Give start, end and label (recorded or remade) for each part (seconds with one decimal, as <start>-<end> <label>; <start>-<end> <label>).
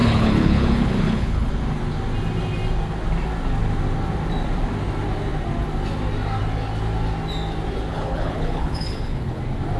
0.0-1.5 remade; 1.5-7.9 recorded; 7.9-9.4 remade; 9.4-9.8 recorded